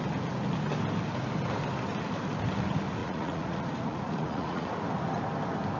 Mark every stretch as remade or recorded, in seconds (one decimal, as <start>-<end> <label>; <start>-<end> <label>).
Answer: 0.0-3.0 recorded; 3.0-4.7 remade; 4.7-5.8 recorded